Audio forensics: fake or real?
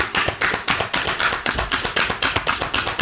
real